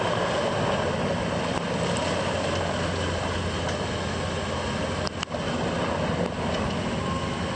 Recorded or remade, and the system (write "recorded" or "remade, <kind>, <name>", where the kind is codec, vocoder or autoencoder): recorded